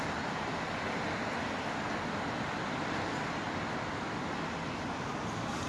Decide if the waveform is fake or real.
real